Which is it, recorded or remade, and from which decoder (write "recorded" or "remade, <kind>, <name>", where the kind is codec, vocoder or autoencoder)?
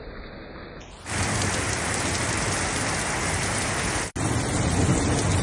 recorded